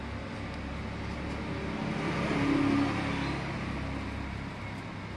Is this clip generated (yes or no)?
no